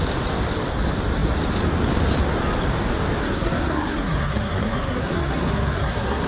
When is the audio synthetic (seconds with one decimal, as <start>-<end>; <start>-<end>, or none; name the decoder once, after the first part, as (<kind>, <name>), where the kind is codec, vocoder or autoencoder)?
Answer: 3.2-6.3 (codec, SNAC)